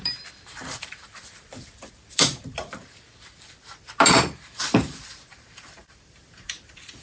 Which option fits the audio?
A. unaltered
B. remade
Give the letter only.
B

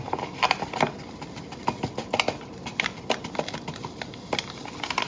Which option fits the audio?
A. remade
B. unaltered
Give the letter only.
B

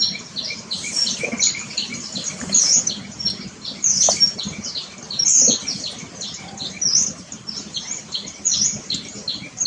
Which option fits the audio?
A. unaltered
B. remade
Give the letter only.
A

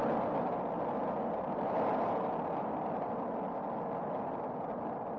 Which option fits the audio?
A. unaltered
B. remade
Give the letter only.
A